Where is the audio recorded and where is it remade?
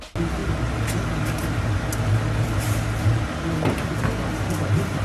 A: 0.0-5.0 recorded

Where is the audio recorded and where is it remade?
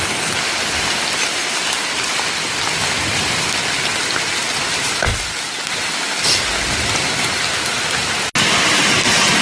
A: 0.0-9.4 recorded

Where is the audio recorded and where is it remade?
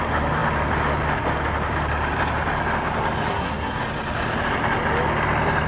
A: 0.0-3.3 recorded; 3.3-3.8 remade; 3.8-5.7 recorded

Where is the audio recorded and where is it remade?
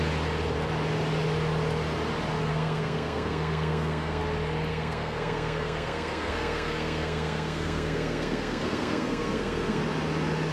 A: 0.0-2.5 recorded; 2.5-4.2 remade; 4.2-4.7 recorded; 4.7-9.8 remade; 9.8-10.5 recorded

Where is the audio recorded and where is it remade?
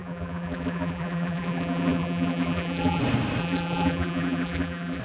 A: 0.0-3.0 remade; 3.0-3.4 recorded; 3.4-5.0 remade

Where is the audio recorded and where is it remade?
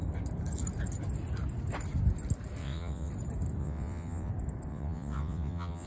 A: 0.0-2.6 recorded; 2.6-3.1 remade; 3.1-3.6 recorded; 3.6-4.3 remade; 4.3-4.7 recorded; 4.7-5.9 remade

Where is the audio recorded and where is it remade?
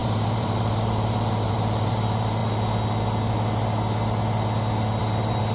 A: 0.0-2.4 remade; 2.4-5.0 recorded; 5.0-5.5 remade